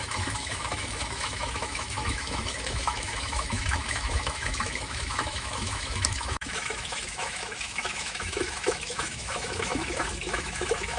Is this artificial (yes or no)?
yes